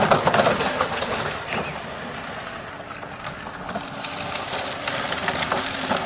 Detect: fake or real real